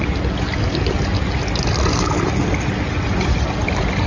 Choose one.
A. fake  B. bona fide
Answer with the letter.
B